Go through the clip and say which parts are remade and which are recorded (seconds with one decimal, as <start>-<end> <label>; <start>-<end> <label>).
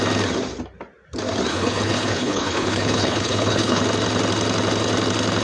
0.0-1.5 recorded; 1.5-3.8 remade; 3.8-5.4 recorded